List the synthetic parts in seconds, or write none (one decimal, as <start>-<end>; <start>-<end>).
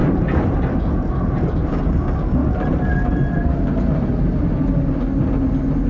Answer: 1.7-2.4